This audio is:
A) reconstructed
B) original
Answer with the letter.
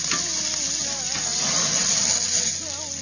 B